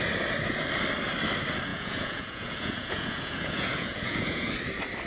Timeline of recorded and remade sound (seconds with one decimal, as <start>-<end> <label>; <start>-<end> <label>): 0.0-1.7 recorded; 1.7-4.5 remade; 4.5-5.1 recorded